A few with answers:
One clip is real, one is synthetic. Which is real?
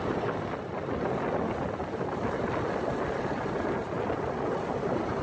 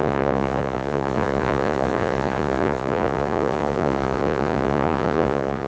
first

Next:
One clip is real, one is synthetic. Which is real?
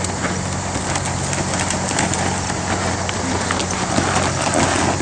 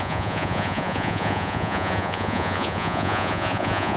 first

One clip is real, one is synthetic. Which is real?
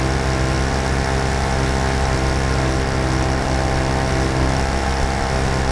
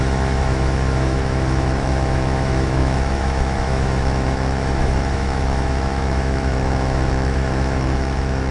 first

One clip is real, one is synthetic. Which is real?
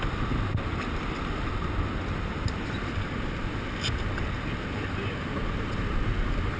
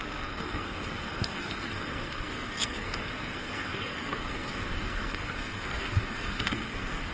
first